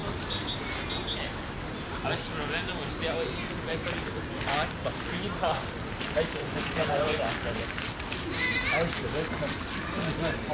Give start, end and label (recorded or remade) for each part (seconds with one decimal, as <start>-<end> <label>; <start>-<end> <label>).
0.0-6.4 recorded; 6.4-7.2 remade; 7.2-10.5 recorded